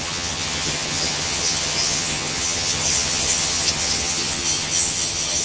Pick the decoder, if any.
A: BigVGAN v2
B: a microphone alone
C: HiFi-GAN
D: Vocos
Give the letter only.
C